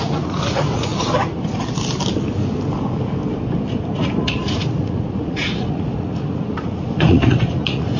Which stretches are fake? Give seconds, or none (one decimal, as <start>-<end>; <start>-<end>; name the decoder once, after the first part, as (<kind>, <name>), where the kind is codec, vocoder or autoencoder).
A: 0.0-0.9 (vocoder, Vocos); 4.0-8.0